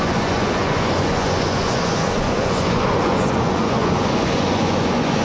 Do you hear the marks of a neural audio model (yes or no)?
yes